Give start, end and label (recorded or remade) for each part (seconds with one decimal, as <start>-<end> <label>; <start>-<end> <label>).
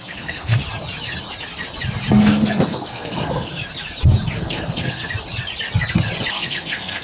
0.0-0.6 remade; 0.6-2.2 recorded; 2.2-3.6 remade; 3.6-4.3 recorded; 4.3-5.0 remade; 5.0-6.3 recorded; 6.3-7.0 remade